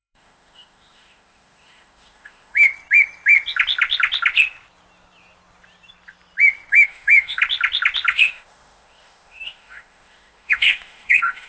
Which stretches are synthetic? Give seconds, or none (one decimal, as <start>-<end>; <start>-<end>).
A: 0.0-2.7; 6.7-7.4; 8.1-11.5